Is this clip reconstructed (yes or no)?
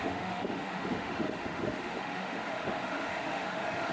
yes